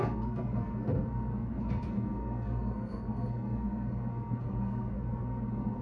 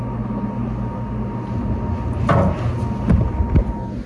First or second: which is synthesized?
first